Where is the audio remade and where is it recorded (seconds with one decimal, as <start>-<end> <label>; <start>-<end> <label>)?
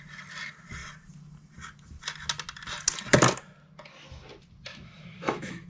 0.0-4.7 recorded; 4.7-5.7 remade